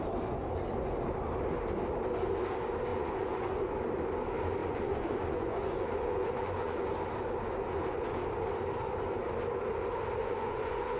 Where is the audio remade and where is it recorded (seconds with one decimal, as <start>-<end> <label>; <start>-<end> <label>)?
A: 0.0-2.9 recorded; 2.9-3.7 remade; 3.7-4.6 recorded; 4.6-6.9 remade; 6.9-10.2 recorded; 10.2-11.0 remade